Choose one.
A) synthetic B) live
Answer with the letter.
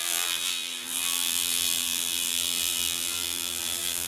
A